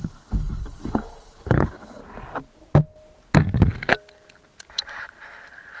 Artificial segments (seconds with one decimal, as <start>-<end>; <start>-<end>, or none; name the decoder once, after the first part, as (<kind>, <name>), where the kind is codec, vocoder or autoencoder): 0.0-2.0 (codec, HILCodec)